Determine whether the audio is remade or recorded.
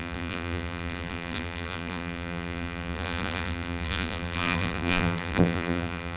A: remade